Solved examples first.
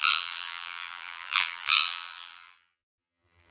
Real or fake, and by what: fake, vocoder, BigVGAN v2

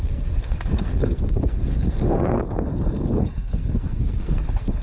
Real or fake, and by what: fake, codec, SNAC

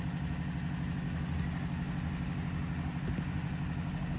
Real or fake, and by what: real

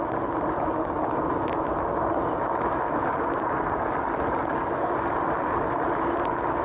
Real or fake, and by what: real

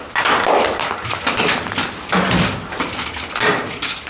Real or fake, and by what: real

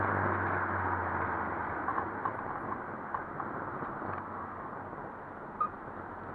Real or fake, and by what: real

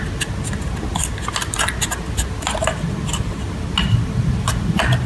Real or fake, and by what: real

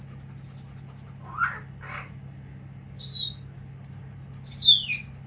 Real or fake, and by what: real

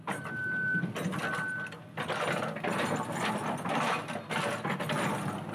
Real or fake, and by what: real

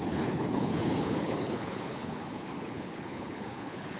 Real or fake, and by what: fake, codec, HILCodec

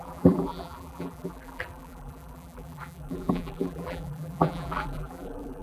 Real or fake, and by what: fake, vocoder, BigVGAN v2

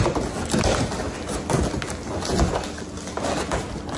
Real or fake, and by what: real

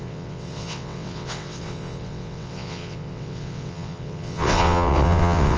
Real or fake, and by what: fake, vocoder, WaveNeXt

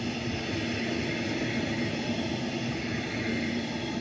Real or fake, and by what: real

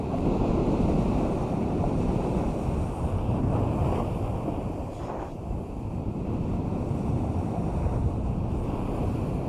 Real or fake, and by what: real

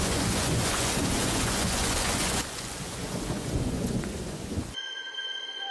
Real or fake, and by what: fake, vocoder, Vocos